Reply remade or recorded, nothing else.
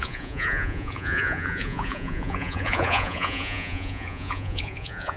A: remade